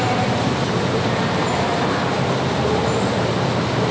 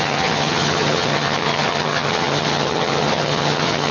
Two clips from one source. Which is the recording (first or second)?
first